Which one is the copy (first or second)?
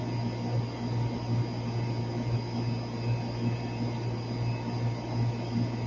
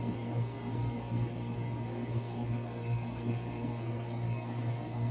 second